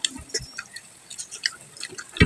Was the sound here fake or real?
real